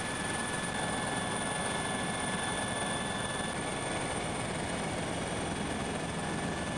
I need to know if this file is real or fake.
real